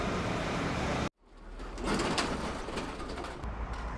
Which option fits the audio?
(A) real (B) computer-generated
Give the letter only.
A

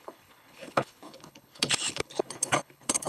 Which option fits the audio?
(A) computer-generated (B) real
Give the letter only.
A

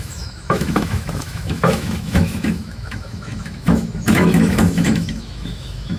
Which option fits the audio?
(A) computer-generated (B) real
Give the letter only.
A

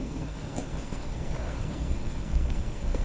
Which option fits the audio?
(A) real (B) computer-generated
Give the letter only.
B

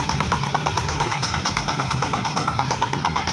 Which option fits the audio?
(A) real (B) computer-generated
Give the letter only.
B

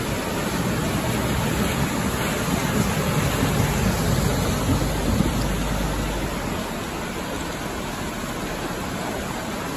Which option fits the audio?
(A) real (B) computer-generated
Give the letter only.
A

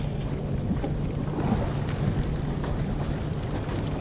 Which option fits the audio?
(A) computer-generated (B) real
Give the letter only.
B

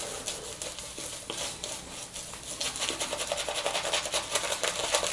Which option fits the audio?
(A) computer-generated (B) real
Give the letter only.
B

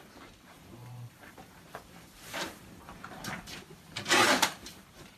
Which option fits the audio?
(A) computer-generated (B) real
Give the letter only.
A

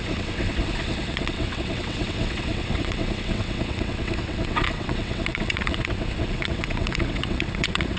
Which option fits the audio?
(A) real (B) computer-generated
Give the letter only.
B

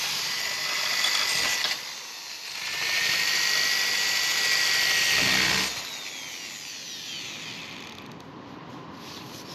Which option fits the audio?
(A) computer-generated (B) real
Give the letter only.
B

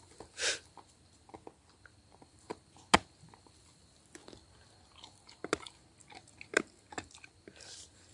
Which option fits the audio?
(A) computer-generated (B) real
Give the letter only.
B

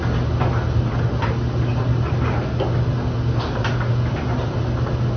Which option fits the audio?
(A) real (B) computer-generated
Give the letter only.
A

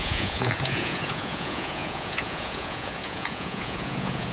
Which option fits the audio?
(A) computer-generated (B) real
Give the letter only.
A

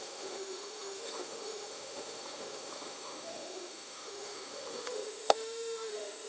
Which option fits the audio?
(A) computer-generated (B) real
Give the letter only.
A